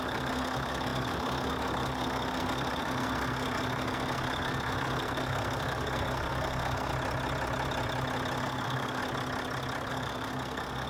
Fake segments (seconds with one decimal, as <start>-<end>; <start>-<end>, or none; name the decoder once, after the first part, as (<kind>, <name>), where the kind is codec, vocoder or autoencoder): 0.0-6.9 (codec, SNAC); 8.4-9.0; 9.9-10.9